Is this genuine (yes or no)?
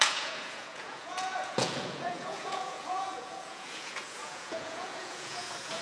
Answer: no